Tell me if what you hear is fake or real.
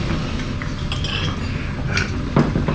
real